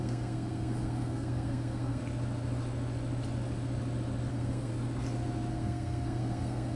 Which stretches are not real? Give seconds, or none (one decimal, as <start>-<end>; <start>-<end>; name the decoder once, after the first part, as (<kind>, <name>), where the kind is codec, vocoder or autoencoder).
0.0-2.0 (codec, SNAC); 4.3-4.7; 5.5-6.8

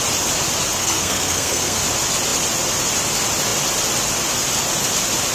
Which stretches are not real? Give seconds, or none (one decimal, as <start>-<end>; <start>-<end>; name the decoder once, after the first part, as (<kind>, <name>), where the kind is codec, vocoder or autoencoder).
0.8-1.8 (codec, SNAC)

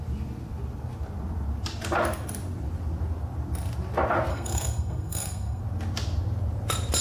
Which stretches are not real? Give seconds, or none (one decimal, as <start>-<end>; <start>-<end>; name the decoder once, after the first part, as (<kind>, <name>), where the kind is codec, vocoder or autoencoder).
4.3-5.6 (codec, SNAC)

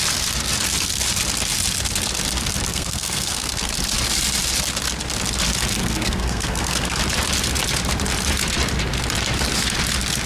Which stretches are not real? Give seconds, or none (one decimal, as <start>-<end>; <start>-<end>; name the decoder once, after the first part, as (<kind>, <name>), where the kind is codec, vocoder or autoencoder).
2.7-3.7 (codec, SNAC); 5.8-7.0

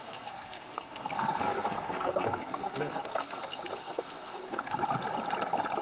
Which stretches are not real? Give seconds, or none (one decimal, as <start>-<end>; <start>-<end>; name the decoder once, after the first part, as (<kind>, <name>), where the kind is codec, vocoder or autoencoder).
0.0-3.4 (codec, SNAC); 3.8-4.7